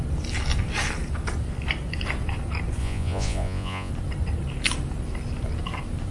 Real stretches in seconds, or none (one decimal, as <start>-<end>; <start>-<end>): 0.0-2.8; 3.9-6.1